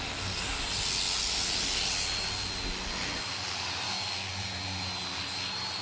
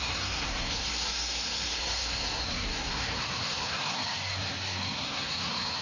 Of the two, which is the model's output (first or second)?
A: second